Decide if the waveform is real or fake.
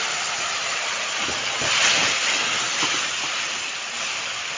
real